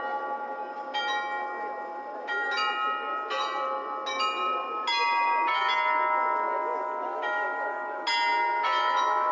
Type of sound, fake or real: real